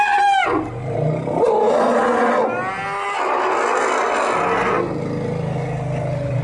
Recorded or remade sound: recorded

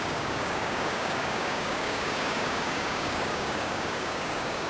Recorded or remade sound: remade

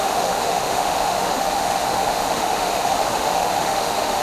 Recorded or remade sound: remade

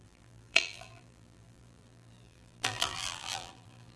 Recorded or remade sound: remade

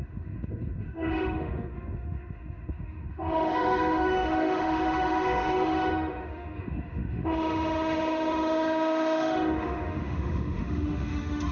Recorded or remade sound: remade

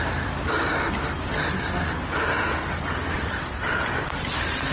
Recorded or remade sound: recorded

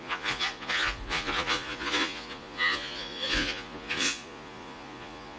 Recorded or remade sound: remade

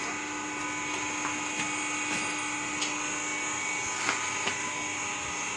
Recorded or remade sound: recorded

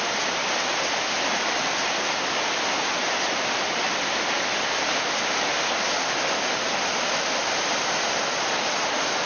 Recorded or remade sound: recorded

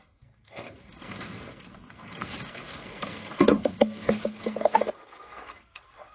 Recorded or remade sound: remade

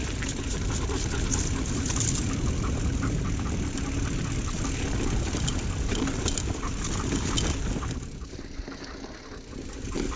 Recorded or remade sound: recorded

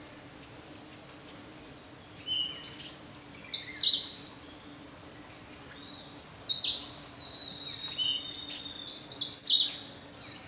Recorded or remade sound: recorded